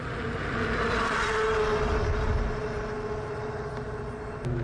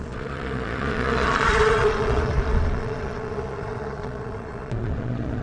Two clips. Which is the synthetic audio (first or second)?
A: second